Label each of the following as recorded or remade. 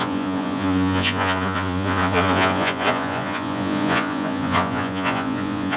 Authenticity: remade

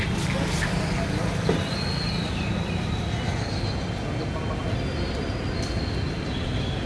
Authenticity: recorded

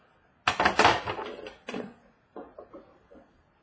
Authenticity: recorded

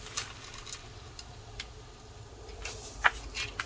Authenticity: recorded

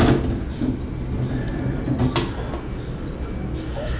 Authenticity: recorded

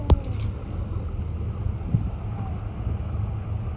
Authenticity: recorded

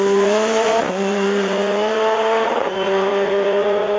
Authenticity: remade